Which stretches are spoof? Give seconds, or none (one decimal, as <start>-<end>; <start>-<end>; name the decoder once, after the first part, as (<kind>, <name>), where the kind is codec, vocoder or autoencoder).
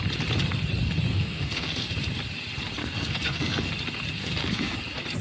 1.1-1.9 (codec, SNAC); 2.8-3.7; 4.2-4.8